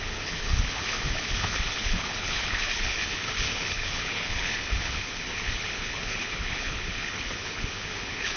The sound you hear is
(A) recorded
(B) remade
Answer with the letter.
B